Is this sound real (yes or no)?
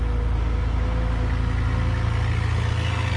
yes